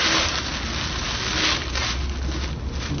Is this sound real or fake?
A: real